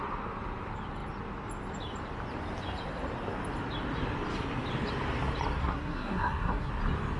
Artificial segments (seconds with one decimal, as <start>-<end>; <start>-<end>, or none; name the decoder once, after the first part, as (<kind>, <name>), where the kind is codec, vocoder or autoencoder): 5.6-6.7 (codec, SNAC)